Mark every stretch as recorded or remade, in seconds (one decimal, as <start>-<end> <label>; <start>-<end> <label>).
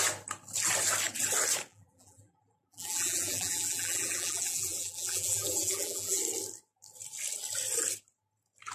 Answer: 0.0-1.7 recorded; 1.7-6.2 remade; 6.2-8.7 recorded